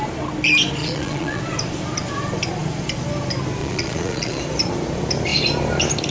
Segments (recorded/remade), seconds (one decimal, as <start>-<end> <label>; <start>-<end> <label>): 0.0-0.8 recorded; 0.8-1.4 remade; 1.4-3.6 recorded; 3.6-4.4 remade; 4.4-6.1 recorded